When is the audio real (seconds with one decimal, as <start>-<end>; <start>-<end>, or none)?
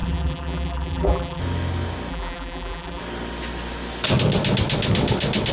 1.4-2.1; 3.0-5.5